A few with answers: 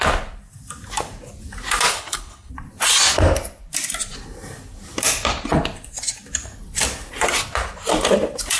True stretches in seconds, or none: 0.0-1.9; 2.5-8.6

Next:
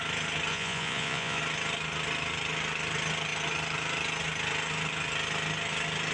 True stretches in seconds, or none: 0.0-0.5; 1.4-6.1

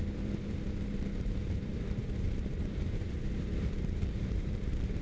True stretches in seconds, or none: none

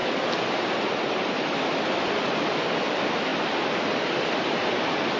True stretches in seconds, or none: 2.1-5.2

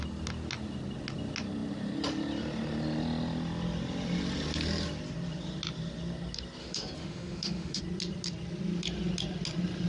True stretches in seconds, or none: 0.0-6.6; 7.8-9.9